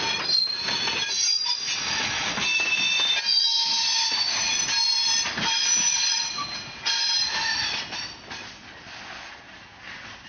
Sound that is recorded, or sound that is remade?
recorded